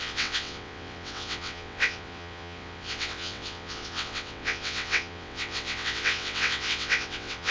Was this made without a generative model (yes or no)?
no